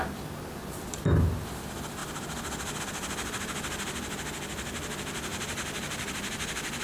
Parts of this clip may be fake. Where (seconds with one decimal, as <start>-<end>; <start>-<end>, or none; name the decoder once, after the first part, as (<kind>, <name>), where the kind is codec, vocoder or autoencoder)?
none